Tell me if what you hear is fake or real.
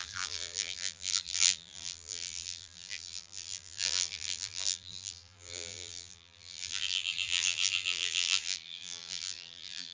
fake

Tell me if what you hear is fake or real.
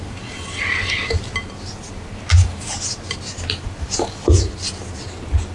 real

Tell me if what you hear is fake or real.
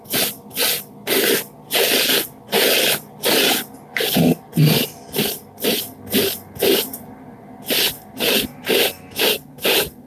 real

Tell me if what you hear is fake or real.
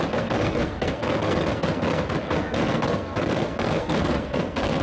fake